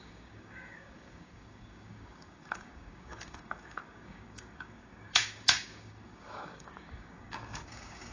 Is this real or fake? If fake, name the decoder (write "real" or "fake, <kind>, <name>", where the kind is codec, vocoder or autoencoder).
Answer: fake, codec, DAC